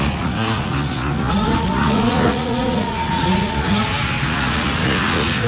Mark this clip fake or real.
fake